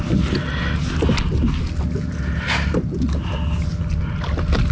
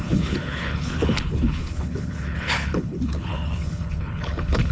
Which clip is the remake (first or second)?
second